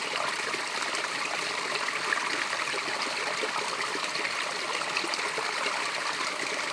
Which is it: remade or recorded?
recorded